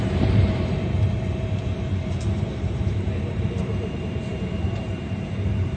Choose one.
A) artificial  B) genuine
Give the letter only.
A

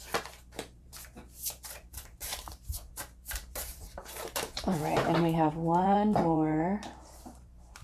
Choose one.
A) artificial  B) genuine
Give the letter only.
A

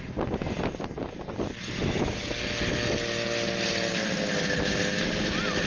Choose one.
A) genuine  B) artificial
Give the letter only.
A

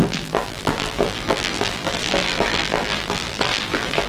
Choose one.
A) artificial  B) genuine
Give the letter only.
A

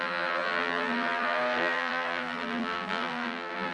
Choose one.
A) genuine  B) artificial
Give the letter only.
B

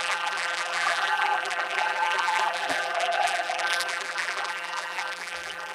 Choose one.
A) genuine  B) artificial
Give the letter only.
B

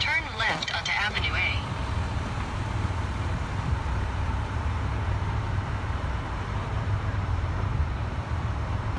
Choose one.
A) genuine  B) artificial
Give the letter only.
B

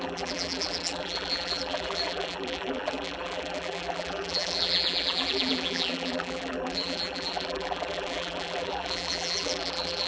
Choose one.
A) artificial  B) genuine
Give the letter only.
A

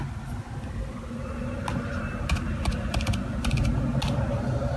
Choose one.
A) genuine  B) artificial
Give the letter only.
A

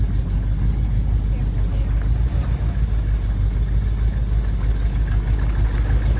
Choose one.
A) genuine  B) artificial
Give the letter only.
A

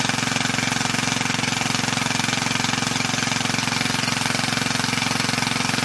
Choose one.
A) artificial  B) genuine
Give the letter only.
B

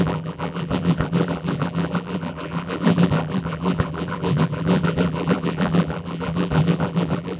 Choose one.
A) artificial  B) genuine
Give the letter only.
A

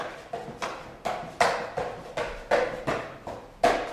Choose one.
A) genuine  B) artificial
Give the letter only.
A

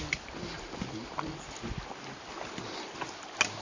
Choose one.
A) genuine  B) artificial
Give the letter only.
A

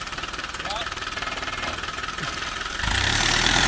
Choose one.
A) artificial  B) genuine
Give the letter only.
A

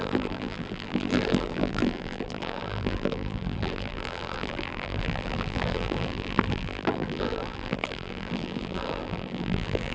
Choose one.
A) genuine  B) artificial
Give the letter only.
B